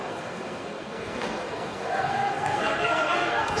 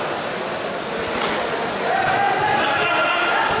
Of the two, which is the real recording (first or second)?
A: second